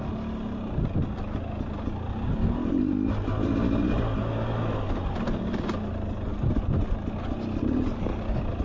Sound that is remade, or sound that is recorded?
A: recorded